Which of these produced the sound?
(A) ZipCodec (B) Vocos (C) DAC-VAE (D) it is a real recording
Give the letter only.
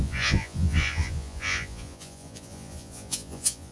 B